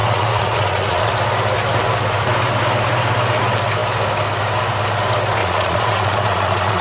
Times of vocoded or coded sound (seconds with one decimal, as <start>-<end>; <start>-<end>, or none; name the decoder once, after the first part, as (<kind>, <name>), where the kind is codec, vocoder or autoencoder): 0.0-1.1 (vocoder, Vocos); 5.4-6.8